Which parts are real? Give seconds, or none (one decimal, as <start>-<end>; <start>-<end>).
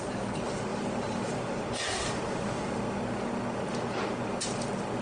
0.0-0.7; 2.7-5.0